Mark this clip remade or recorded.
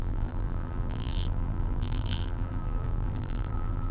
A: remade